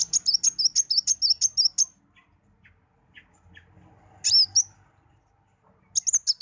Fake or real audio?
real